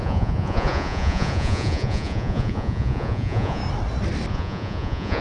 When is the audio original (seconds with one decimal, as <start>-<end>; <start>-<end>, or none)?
3.6-4.3